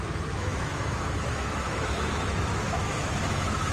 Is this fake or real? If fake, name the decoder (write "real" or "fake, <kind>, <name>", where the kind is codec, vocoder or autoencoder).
fake, autoencoder, DAC-VAE